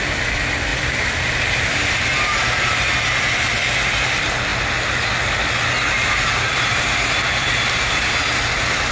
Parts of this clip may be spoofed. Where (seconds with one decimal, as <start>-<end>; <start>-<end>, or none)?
0.7-2.8; 6.0-8.1